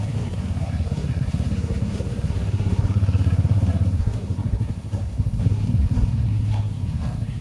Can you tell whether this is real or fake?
fake